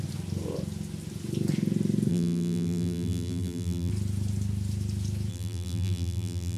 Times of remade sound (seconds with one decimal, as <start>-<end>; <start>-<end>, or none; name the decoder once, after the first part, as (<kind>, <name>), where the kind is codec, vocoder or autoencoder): 2.1-3.9 (vocoder, BigVGAN v2); 5.3-6.6